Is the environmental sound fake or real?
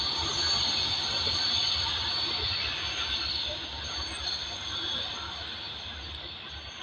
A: real